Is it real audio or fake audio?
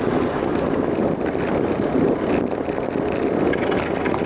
real